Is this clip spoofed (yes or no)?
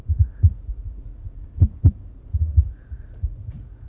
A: yes